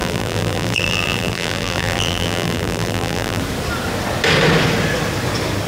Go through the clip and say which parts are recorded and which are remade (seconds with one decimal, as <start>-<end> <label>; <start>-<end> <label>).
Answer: 0.0-3.4 remade; 3.4-5.7 recorded